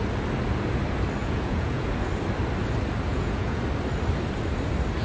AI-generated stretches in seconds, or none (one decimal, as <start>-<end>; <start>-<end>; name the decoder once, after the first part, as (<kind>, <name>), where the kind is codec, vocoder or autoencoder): 1.2-1.9 (vocoder, Vocos); 3.1-3.6